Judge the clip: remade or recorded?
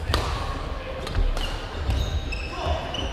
recorded